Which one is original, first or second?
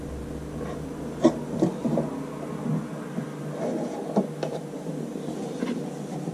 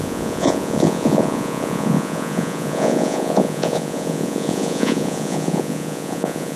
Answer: first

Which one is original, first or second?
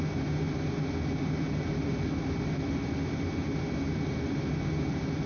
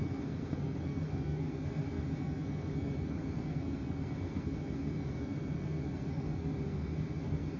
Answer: first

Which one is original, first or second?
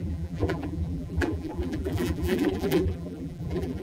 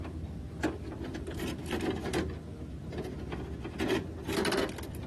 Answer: second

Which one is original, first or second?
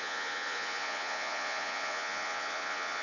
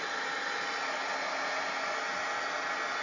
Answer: second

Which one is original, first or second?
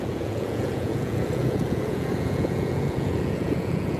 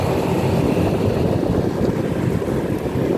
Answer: second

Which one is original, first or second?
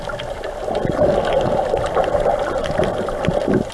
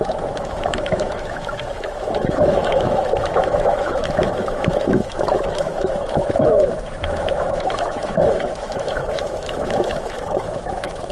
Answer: first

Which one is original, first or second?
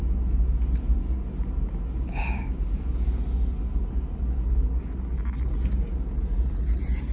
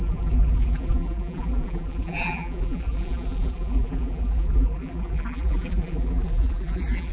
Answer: first